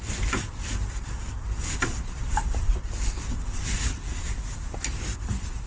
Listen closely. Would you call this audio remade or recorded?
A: recorded